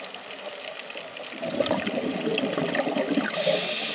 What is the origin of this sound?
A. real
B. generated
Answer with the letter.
A